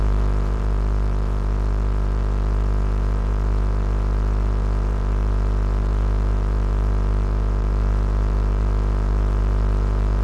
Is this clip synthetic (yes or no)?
yes